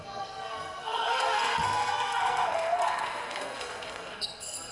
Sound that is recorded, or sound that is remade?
remade